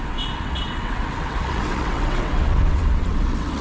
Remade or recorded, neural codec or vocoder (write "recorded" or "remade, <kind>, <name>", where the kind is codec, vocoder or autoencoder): remade, vocoder, WaveNeXt